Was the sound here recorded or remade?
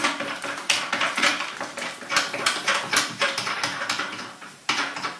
remade